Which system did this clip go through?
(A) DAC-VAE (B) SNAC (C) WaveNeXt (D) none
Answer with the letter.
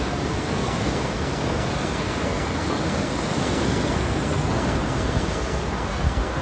B